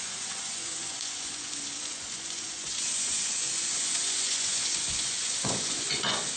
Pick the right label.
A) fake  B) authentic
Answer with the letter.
A